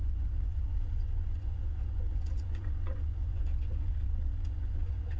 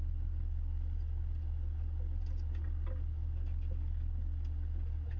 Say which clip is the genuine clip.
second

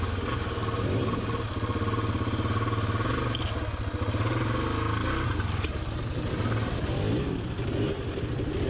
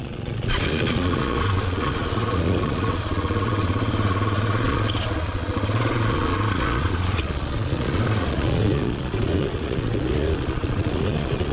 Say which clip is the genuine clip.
first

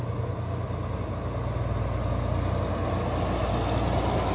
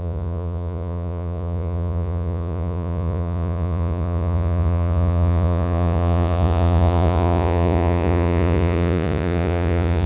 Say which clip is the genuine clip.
first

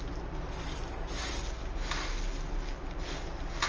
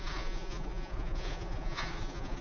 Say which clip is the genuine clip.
first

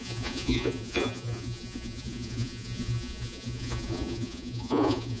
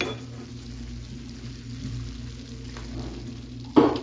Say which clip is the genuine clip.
second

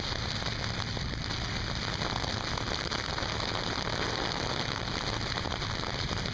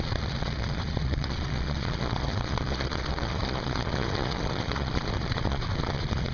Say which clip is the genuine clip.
first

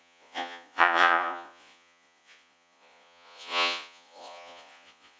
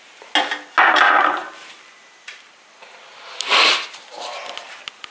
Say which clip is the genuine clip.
second